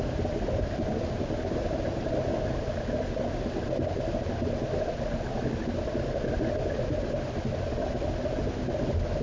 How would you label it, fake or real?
real